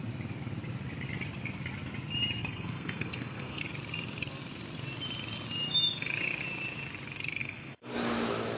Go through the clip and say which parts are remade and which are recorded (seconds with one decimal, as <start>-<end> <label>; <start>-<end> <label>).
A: 0.0-2.4 recorded; 2.4-3.6 remade; 3.6-7.4 recorded; 7.4-7.9 remade; 7.9-8.6 recorded